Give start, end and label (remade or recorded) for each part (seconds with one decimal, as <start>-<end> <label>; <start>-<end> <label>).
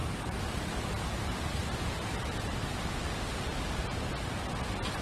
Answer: 0.0-0.7 remade; 0.7-1.6 recorded; 1.6-4.6 remade; 4.6-5.0 recorded